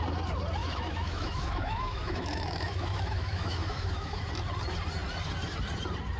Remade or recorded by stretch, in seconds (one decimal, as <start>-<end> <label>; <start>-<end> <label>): 0.0-0.6 recorded; 0.6-4.3 remade; 4.3-6.2 recorded